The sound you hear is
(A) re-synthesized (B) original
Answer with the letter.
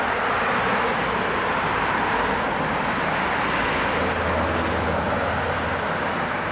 B